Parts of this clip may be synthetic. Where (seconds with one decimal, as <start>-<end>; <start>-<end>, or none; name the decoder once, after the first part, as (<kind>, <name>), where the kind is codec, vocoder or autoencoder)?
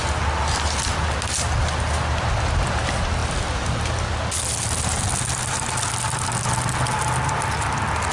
none